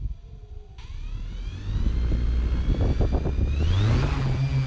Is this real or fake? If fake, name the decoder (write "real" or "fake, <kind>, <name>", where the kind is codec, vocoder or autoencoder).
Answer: real